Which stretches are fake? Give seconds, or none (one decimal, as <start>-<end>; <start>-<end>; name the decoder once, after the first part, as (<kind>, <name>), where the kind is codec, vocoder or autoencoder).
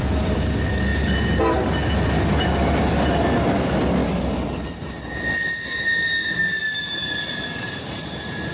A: 0.0-0.9 (vocoder, BigVGAN v2); 3.6-4.0; 7.6-8.5